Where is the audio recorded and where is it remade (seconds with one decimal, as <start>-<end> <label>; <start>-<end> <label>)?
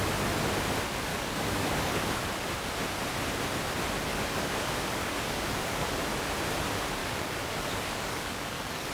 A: 0.0-1.1 recorded; 1.1-2.2 remade; 2.2-4.1 recorded; 4.1-6.0 remade; 6.0-7.0 recorded; 7.0-8.9 remade